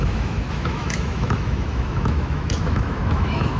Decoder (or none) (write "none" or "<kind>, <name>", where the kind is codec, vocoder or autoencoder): autoencoder, DAC-VAE